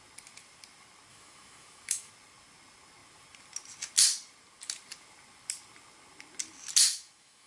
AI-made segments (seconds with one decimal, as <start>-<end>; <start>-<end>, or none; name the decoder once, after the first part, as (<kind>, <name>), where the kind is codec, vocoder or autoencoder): 1.1-2.1 (autoencoder, DAC-VAE); 6.9-7.5